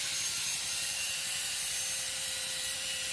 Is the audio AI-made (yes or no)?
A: yes